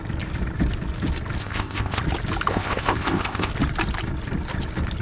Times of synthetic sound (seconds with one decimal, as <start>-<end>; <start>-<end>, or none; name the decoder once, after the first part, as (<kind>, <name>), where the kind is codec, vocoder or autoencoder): 1.4-2.0 (codec, ZipCodec); 2.5-3.5